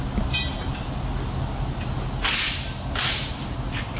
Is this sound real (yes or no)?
yes